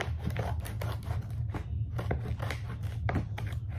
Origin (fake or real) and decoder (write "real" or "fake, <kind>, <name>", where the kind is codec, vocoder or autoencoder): real